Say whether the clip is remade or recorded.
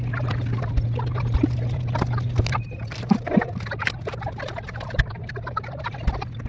recorded